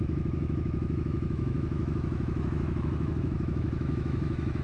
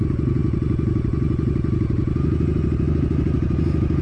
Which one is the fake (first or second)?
first